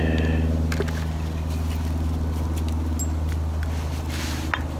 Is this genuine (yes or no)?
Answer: yes